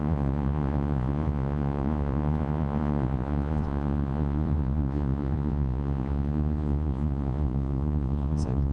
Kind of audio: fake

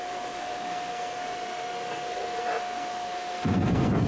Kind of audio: fake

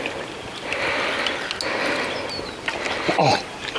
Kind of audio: real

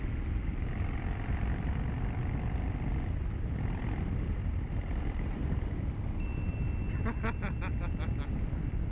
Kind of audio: real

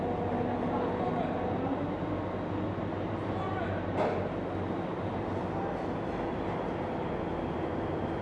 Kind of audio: real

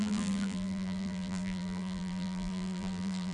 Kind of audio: fake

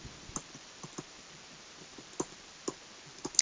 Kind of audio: real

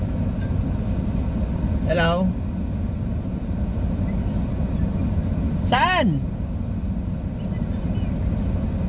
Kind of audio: real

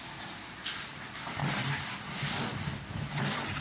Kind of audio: real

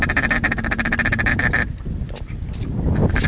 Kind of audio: real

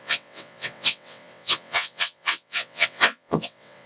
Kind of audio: fake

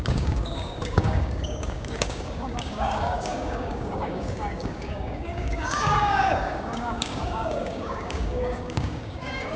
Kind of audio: fake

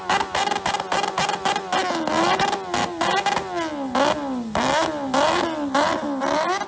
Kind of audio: real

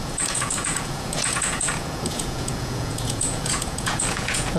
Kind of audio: fake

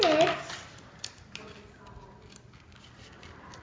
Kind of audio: real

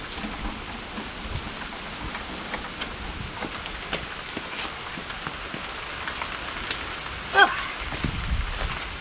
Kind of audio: real